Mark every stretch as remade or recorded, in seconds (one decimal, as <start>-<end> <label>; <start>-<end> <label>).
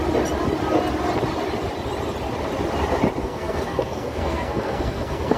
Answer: 0.0-3.2 recorded; 3.2-5.4 remade